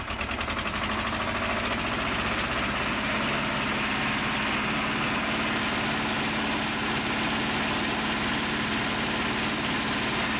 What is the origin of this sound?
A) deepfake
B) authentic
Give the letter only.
B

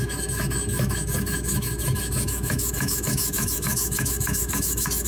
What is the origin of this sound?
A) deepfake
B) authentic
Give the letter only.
A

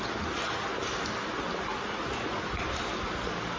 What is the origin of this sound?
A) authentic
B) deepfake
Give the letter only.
A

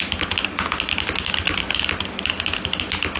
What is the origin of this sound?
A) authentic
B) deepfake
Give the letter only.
A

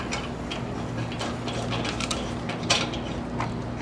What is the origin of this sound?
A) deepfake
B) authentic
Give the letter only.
B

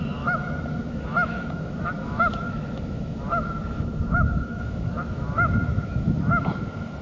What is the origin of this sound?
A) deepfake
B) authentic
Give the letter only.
A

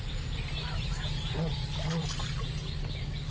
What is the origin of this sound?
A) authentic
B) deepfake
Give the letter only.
A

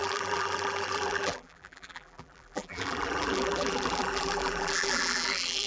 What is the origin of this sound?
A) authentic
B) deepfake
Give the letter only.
B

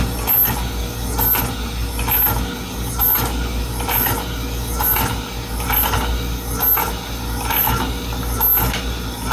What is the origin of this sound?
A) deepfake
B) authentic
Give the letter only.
B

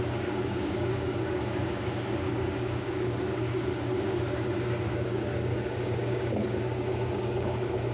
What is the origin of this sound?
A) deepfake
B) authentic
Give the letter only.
A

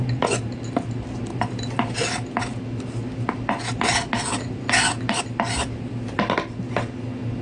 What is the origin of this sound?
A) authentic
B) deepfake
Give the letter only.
A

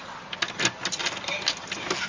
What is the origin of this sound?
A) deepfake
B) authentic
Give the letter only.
B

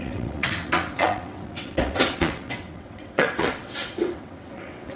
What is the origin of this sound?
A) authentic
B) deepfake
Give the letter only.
B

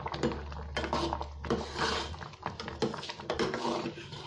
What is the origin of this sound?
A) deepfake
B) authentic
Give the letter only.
B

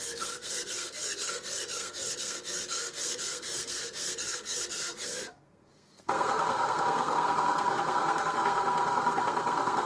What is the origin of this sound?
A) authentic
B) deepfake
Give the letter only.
B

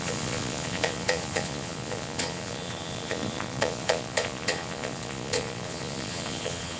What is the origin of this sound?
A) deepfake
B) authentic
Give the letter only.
A